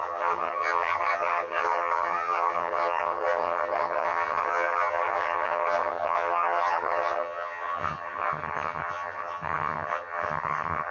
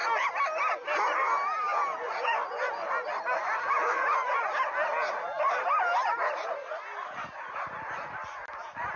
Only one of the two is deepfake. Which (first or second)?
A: first